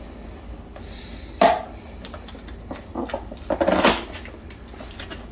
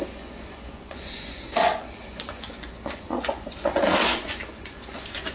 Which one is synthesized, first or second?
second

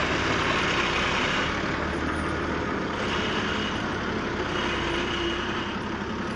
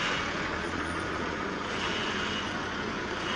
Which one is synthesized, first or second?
second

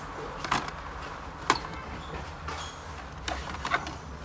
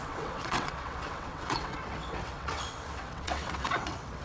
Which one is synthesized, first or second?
second